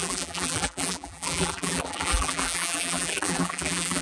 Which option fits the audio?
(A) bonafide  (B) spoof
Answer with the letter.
B